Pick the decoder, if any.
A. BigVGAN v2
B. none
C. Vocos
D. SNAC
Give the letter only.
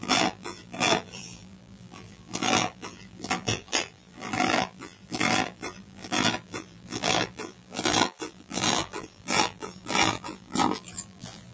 A